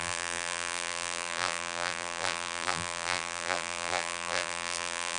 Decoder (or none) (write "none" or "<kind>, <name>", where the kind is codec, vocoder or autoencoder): vocoder, BigVGAN v2